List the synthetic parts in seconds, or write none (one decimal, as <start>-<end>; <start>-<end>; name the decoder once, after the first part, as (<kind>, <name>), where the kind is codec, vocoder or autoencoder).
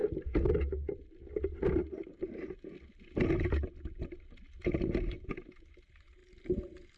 0.6-1.8 (vocoder, BigVGAN v2); 5.0-6.2